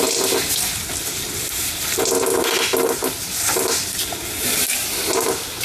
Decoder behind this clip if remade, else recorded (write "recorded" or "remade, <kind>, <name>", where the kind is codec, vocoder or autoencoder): recorded